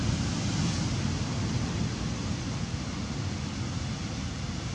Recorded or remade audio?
recorded